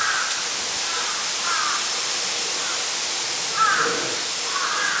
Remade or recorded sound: recorded